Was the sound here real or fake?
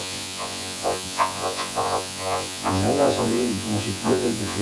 fake